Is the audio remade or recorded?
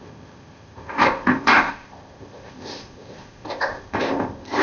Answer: remade